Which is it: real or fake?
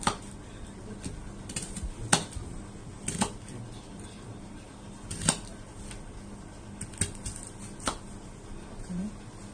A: real